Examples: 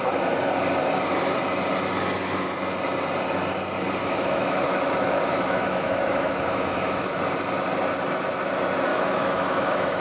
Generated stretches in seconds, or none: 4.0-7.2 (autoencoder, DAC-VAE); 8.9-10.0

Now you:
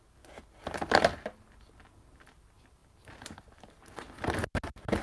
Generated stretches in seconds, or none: none

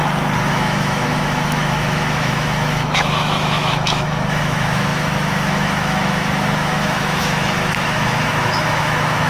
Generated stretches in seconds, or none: 0.5-9.3 (autoencoder, DAC-VAE)

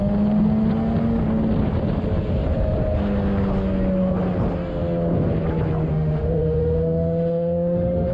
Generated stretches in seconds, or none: 5.9-8.1 (autoencoder, DAC-VAE)